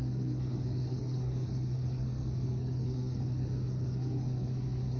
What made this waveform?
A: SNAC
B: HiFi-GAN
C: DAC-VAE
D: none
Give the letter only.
A